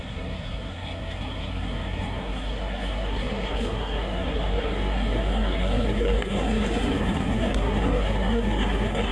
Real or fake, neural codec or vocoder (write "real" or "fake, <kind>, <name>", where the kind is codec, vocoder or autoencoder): fake, codec, SNAC